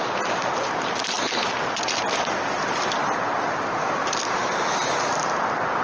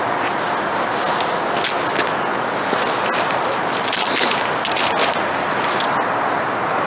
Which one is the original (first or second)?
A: second